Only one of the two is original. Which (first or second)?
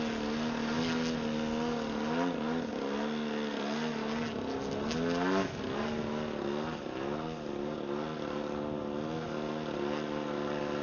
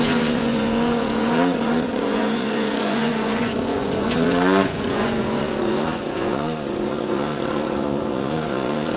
first